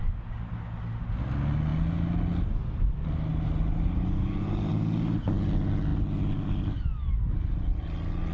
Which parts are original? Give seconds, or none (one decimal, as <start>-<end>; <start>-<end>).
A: 0.0-8.3